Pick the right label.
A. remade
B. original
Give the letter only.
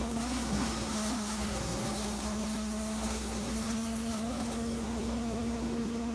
A